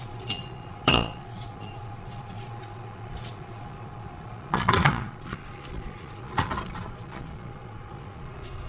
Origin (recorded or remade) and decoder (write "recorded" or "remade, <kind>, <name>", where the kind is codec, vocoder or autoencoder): remade, vocoder, Vocos